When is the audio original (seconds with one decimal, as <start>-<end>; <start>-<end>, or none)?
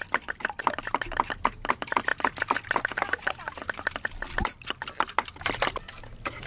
0.0-6.5